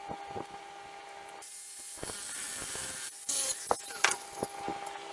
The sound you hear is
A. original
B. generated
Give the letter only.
A